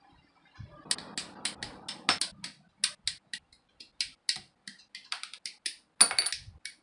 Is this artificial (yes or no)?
no